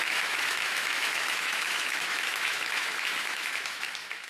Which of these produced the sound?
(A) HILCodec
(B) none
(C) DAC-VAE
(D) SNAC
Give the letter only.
C